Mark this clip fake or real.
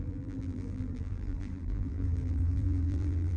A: fake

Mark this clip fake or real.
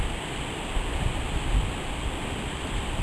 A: real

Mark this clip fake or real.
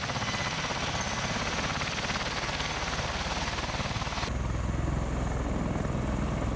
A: real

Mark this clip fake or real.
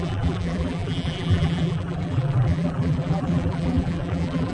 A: fake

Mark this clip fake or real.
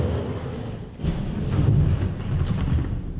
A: real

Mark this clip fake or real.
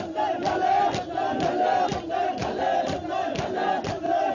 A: real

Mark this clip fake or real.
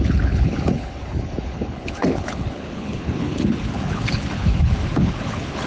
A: fake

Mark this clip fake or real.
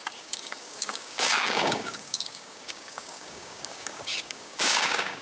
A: fake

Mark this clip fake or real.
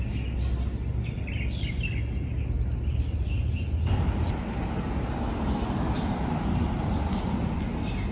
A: real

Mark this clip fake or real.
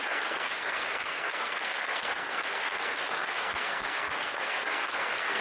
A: fake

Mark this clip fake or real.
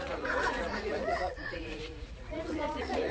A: fake